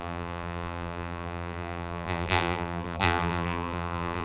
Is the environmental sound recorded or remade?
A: remade